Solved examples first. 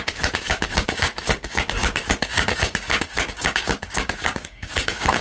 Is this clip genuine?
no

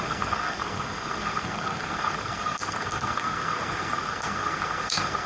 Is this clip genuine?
no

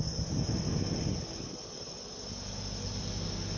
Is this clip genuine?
yes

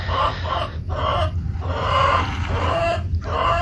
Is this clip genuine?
yes